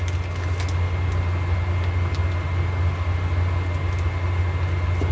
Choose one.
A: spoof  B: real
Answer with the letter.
B